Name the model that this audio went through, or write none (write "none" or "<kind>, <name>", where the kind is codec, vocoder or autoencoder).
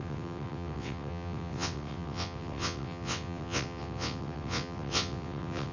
vocoder, WaveNeXt